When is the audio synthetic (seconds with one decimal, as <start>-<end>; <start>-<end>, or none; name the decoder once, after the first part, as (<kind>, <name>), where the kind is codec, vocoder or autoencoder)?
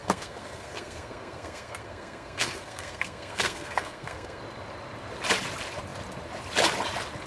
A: 0.0-4.4 (codec, SNAC)